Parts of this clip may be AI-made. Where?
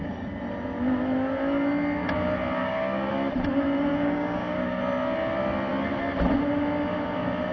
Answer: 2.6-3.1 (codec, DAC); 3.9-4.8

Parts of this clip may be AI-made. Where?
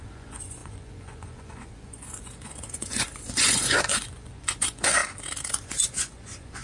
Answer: 0.0-5.0 (vocoder, Vocos); 5.5-6.6